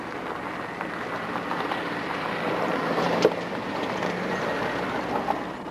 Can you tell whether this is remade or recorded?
recorded